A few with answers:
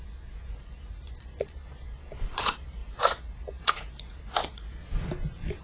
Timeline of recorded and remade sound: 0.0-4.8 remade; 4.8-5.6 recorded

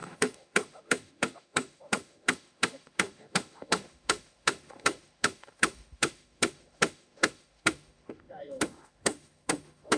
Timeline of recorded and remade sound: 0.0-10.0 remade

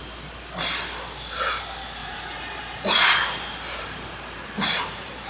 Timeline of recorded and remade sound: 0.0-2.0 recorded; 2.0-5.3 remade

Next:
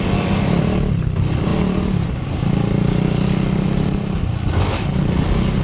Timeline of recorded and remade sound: 0.0-5.6 recorded